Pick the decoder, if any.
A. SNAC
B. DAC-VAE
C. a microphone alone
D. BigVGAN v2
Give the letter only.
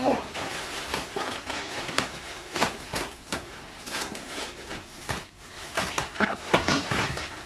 A